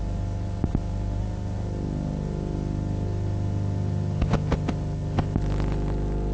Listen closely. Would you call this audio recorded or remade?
recorded